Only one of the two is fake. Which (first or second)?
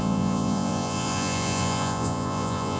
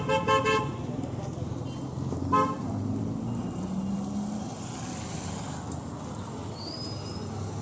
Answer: first